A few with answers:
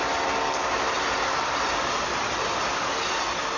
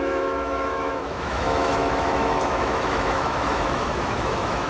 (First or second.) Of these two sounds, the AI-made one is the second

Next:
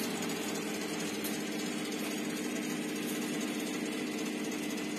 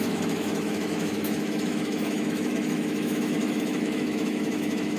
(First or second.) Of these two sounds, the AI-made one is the second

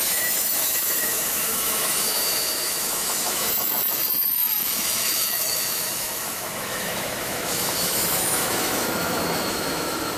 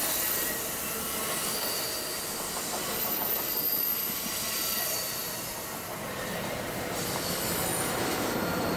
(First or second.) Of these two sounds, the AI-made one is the first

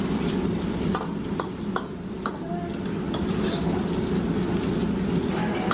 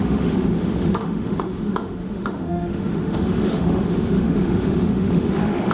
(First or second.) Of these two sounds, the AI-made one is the second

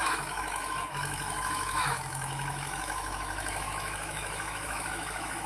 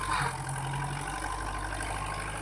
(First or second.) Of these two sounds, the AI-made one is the first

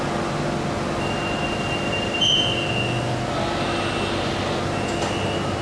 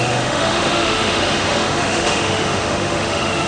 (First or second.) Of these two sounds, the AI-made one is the second